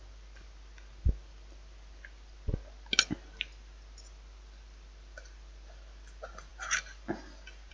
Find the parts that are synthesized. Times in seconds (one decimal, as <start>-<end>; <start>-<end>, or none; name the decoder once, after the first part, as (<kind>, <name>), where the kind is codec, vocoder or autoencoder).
none